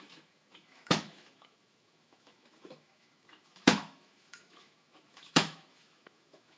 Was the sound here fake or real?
fake